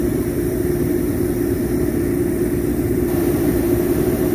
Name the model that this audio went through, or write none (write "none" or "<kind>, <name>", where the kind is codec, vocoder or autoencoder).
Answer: vocoder, BigVGAN v2